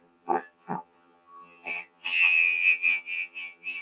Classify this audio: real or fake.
fake